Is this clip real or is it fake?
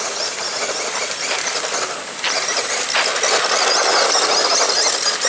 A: real